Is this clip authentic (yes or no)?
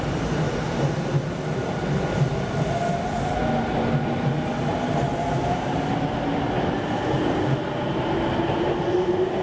yes